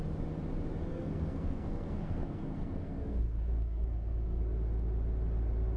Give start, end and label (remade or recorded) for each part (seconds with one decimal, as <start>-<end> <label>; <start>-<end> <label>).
0.0-0.9 recorded; 0.9-4.4 remade; 4.4-5.8 recorded